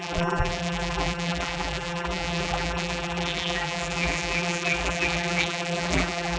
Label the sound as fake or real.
fake